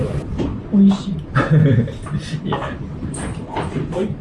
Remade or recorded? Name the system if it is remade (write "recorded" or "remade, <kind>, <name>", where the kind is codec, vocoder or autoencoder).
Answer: recorded